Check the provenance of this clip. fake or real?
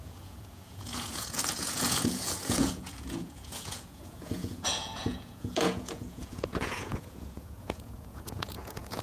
fake